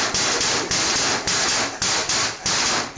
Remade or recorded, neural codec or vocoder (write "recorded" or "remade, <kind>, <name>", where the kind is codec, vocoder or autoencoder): recorded